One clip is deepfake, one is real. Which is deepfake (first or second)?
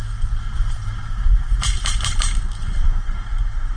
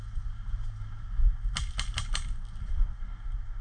first